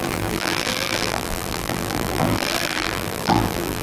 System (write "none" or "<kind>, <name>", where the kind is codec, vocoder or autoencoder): vocoder, BigVGAN v2